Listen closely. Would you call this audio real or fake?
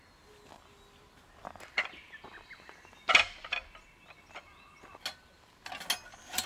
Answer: real